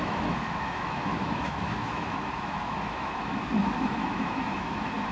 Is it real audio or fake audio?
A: fake